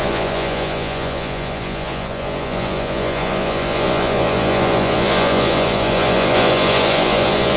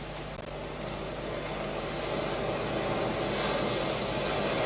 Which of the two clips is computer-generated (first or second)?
first